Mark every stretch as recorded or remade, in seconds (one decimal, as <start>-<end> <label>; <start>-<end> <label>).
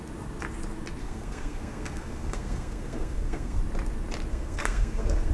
0.0-1.0 recorded; 1.0-3.6 remade; 3.6-4.3 recorded; 4.3-5.3 remade